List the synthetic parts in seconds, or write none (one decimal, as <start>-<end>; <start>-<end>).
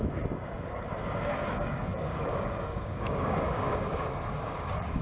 0.0-5.0